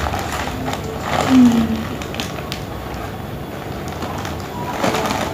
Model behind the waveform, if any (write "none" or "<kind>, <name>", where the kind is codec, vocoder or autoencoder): none